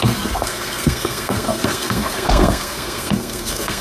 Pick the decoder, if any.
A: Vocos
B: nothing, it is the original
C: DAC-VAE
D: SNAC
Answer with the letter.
D